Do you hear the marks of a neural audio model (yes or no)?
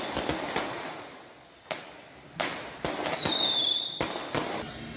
no